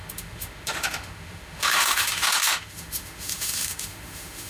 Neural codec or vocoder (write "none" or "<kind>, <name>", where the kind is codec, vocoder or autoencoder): autoencoder, DAC-VAE